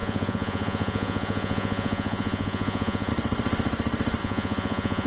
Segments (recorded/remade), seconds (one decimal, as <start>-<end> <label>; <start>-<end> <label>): 0.0-3.1 remade; 3.1-4.2 recorded; 4.2-5.1 remade